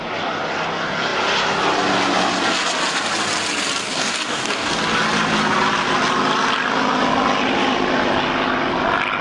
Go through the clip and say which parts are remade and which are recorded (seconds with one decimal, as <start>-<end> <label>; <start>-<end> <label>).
0.0-3.8 recorded; 3.8-4.7 remade; 4.7-9.2 recorded